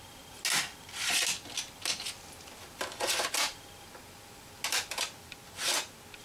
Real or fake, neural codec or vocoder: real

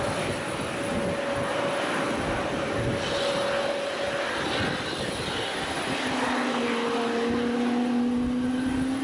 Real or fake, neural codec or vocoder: real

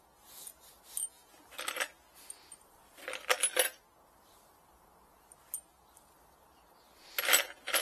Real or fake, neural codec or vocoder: real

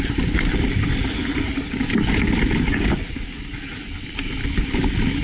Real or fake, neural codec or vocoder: real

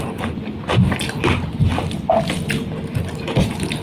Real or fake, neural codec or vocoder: real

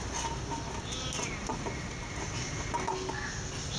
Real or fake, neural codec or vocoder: real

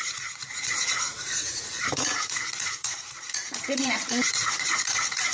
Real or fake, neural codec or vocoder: fake, vocoder, Vocos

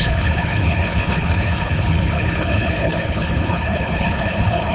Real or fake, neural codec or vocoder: fake, codec, HILCodec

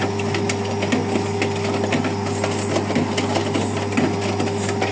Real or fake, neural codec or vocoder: real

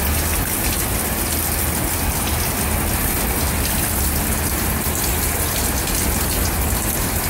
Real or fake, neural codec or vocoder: real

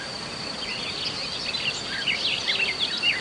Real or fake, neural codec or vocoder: real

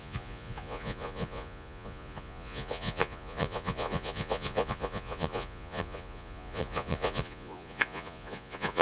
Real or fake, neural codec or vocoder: fake, vocoder, Vocos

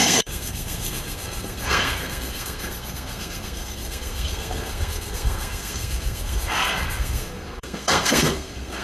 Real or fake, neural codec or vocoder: fake, codec, SNAC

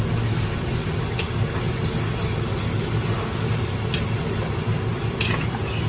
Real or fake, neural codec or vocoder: real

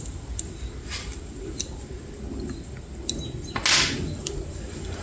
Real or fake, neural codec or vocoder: real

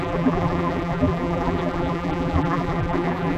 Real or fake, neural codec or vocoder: fake, vocoder, BigVGAN v2